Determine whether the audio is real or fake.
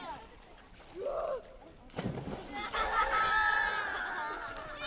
real